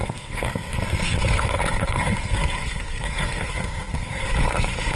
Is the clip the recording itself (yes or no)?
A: no